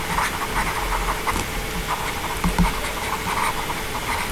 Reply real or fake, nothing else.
real